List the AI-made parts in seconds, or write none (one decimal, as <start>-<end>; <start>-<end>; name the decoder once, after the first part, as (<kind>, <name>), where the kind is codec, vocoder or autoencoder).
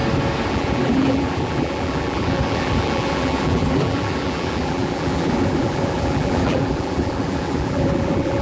0.5-8.4 (vocoder, BigVGAN v2)